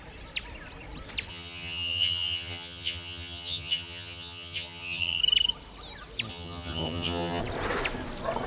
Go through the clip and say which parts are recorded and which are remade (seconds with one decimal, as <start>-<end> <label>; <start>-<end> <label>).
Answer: 0.0-1.3 recorded; 1.3-5.2 remade; 5.2-6.3 recorded; 6.3-7.4 remade; 7.4-8.5 recorded